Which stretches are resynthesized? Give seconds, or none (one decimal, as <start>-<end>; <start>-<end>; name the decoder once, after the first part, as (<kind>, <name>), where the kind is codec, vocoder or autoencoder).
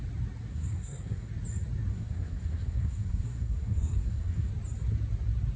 0.5-1.3 (codec, SNAC); 1.9-4.5